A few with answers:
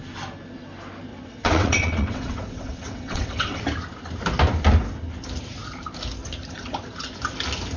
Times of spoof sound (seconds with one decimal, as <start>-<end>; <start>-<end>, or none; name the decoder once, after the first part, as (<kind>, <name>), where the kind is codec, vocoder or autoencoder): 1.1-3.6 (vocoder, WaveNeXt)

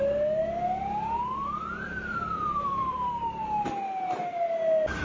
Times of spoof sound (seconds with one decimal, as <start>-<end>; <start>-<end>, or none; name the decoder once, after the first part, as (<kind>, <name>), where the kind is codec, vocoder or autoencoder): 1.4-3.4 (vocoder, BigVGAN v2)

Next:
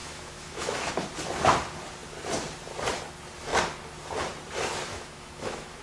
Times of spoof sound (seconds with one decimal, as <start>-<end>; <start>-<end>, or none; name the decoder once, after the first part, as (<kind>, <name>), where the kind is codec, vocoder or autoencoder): 0.0-0.9 (autoencoder, DAC-VAE); 4.9-5.8

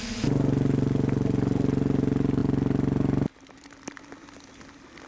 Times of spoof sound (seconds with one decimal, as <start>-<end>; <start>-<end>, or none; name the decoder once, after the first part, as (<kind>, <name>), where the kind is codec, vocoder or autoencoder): none